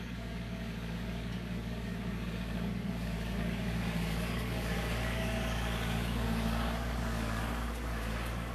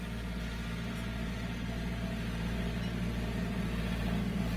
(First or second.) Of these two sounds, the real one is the second